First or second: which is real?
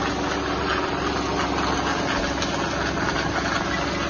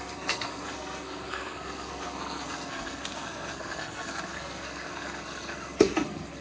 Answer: first